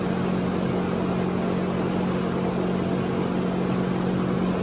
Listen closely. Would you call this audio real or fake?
real